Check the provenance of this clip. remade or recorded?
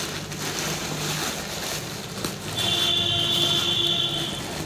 recorded